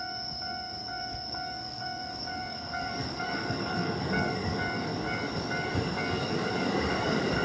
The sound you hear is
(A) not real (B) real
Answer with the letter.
A